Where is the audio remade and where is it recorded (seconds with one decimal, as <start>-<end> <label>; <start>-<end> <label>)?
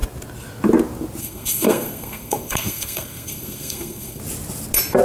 0.0-1.2 recorded; 1.2-4.2 remade; 4.2-5.0 recorded